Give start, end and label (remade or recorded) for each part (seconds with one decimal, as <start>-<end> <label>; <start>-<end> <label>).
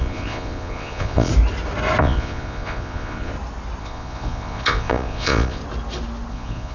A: 0.0-1.3 remade; 1.3-2.0 recorded; 2.0-3.3 remade; 3.3-3.8 recorded; 3.8-5.6 remade; 5.6-6.3 recorded; 6.3-6.7 remade